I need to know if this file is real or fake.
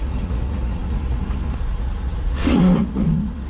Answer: fake